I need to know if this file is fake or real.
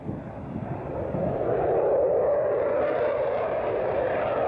real